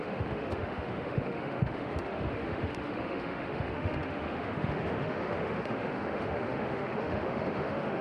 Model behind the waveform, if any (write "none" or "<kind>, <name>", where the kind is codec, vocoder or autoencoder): autoencoder, DAC-VAE